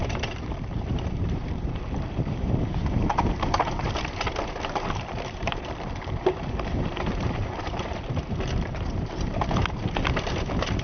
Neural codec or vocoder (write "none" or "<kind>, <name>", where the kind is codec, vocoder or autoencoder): vocoder, BigVGAN v2